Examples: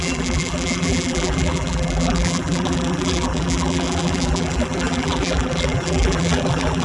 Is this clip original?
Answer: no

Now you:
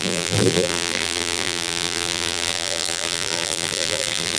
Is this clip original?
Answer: no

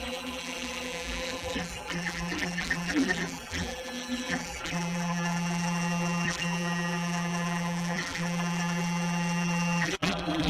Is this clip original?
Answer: no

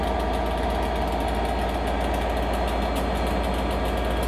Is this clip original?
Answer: yes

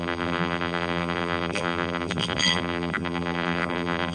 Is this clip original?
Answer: no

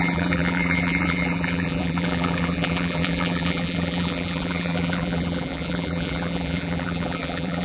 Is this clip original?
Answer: no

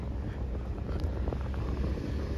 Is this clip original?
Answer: yes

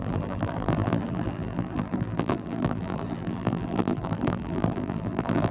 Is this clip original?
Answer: no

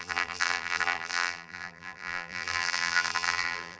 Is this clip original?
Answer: no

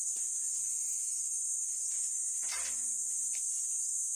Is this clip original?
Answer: yes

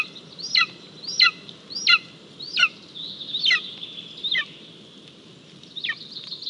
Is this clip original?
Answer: yes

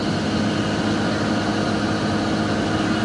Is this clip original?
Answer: yes